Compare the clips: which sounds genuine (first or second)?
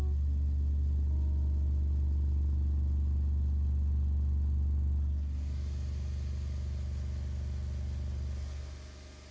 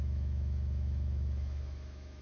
first